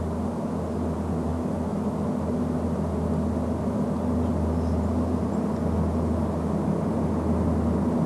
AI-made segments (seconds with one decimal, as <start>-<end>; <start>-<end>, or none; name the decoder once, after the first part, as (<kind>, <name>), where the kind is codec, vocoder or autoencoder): none

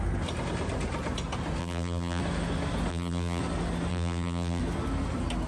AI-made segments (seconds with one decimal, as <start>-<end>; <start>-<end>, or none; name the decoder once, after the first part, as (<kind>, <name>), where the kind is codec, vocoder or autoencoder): 1.6-2.2 (vocoder, BigVGAN v2); 2.9-3.4; 3.9-4.6

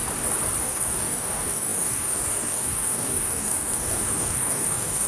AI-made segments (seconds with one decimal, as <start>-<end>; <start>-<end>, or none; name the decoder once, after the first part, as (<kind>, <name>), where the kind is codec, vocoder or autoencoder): 0.6-5.1 (codec, DAC)

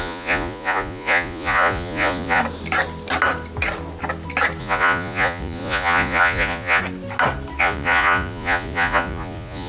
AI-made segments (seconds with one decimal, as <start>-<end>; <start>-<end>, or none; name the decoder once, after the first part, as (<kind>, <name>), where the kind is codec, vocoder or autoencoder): 0.0-2.4 (vocoder, Vocos); 4.6-6.8; 7.6-9.7

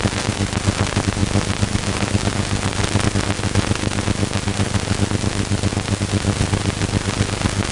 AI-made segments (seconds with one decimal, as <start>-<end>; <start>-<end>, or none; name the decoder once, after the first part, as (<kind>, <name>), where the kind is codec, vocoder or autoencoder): none

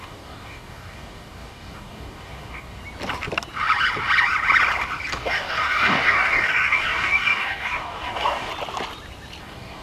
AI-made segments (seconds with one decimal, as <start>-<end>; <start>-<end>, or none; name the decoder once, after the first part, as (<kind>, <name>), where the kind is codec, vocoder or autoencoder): 0.0-2.8 (codec, DAC); 5.1-8.5; 9.4-9.8

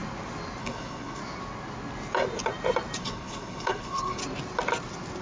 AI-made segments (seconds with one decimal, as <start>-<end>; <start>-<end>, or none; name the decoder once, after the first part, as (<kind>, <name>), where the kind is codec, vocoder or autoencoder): 0.6-1.2 (codec, HILCodec); 3.0-4.2